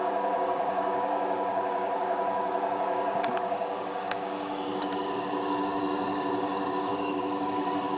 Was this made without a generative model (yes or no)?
no